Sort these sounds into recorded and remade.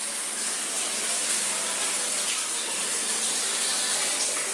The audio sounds recorded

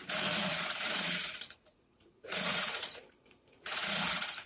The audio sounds remade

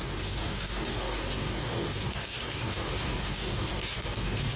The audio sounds remade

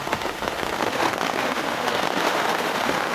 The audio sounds remade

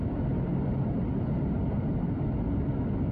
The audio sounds recorded